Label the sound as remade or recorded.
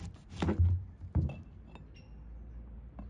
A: recorded